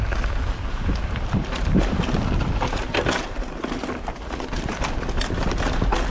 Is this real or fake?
real